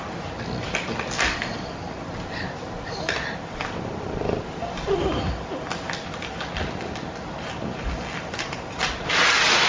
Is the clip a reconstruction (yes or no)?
no